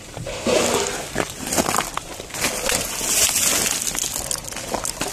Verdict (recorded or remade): recorded